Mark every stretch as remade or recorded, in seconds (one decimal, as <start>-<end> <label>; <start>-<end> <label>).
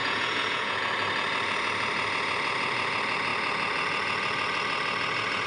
0.0-0.8 remade; 0.8-5.5 recorded